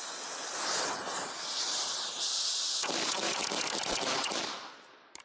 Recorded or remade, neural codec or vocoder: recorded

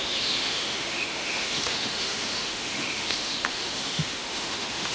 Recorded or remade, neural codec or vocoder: remade, autoencoder, DAC-VAE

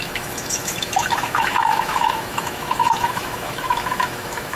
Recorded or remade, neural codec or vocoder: remade, autoencoder, DAC-VAE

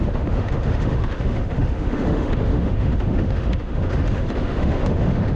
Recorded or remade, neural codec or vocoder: remade, autoencoder, DAC-VAE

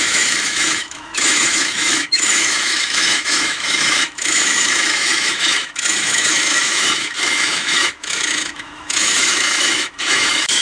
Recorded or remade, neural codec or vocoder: remade, autoencoder, DAC-VAE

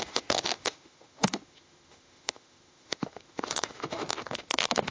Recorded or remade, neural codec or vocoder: remade, autoencoder, DAC-VAE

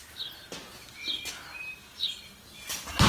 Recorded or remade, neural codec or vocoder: recorded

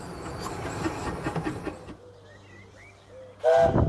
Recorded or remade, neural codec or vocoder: recorded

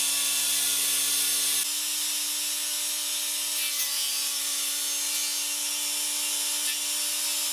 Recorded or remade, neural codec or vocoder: recorded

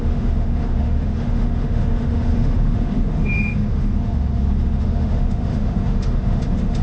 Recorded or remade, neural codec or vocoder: remade, autoencoder, DAC-VAE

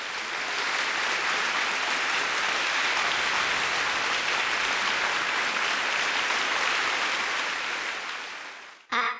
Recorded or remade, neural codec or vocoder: recorded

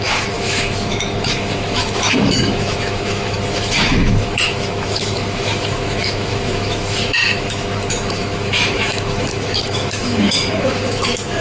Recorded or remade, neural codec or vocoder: remade, autoencoder, DAC-VAE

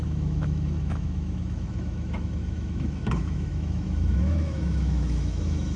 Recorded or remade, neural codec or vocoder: remade, autoencoder, DAC-VAE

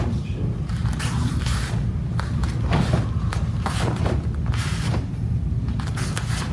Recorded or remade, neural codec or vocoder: recorded